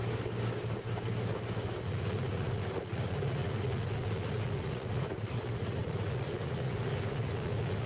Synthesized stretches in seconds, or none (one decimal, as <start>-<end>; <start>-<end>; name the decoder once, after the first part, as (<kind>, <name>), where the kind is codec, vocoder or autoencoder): 1.8-7.9 (vocoder, Vocos)